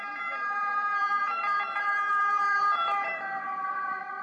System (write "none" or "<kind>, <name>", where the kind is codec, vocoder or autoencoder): vocoder, BigVGAN v2